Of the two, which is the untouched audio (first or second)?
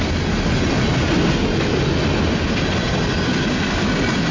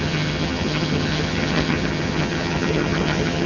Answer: first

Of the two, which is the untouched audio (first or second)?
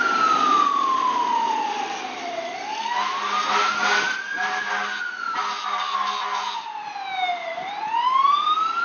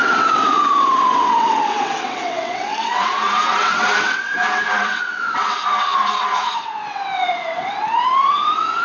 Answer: first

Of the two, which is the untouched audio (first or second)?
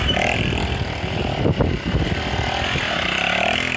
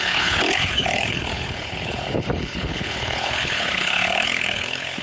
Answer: first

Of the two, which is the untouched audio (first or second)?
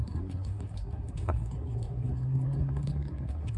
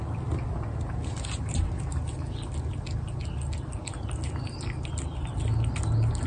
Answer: second